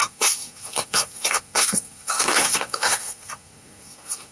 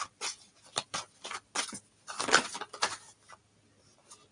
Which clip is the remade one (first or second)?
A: first